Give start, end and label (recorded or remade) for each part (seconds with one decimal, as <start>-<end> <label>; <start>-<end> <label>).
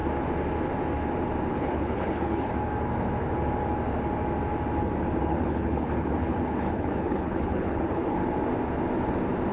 0.0-1.5 recorded; 1.5-2.5 remade; 2.5-5.2 recorded; 5.2-8.2 remade; 8.2-9.5 recorded